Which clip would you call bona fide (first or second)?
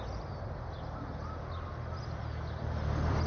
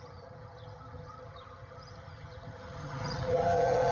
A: first